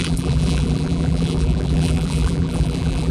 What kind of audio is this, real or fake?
fake